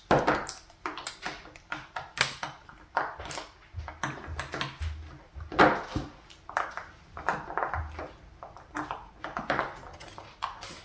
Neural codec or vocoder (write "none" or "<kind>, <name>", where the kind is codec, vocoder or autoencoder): none